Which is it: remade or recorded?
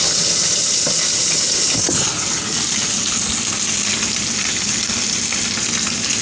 recorded